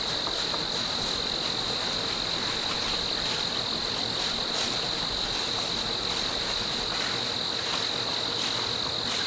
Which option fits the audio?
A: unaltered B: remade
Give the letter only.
A